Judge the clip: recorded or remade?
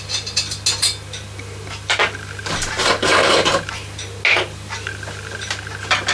recorded